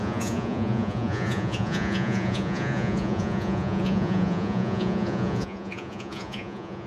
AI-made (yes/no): yes